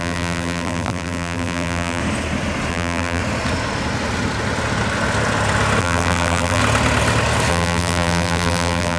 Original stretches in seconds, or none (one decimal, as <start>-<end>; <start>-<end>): 2.0-2.7; 3.2-5.8; 6.6-7.5